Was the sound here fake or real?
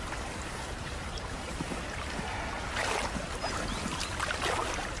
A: real